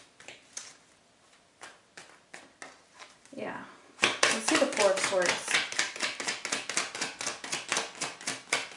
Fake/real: real